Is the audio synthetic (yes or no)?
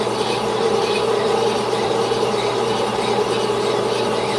no